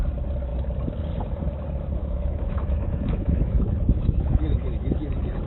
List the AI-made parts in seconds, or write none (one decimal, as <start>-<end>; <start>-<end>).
2.0-4.9